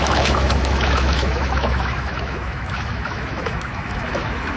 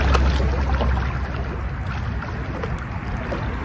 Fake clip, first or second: first